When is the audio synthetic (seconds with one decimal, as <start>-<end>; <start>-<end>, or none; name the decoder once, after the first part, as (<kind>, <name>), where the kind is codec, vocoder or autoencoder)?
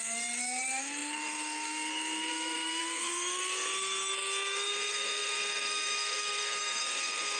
0.0-7.4 (codec, SNAC)